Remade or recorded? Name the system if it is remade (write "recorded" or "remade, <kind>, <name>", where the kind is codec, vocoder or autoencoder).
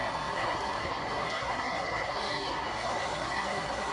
remade, codec, SNAC